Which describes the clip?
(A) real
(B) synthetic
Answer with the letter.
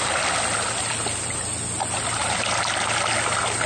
A